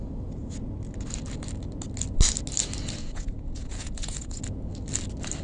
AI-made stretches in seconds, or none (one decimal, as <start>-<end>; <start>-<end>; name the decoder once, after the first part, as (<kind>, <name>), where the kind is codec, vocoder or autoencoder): 3.0-4.4 (vocoder, Vocos)